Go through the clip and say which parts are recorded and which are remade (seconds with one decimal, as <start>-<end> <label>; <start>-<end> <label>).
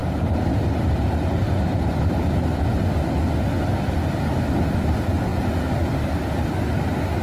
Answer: 0.0-2.6 remade; 2.6-7.2 recorded